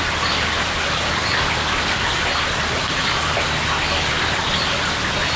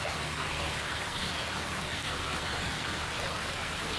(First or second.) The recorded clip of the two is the first